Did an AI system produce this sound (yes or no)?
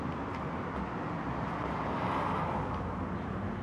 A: no